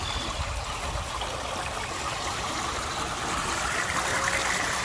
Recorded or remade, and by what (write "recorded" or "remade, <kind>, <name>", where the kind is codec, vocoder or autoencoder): recorded